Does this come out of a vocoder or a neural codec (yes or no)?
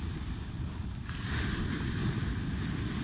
yes